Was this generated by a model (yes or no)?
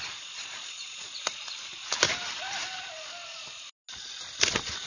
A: no